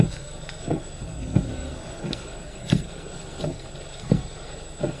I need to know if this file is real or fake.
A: fake